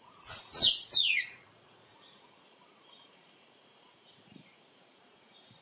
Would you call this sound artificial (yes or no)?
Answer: yes